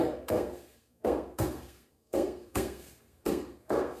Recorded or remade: remade